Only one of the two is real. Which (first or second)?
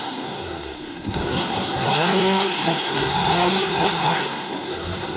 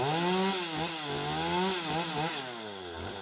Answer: second